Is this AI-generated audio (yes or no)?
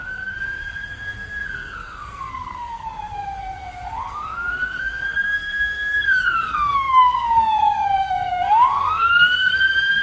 yes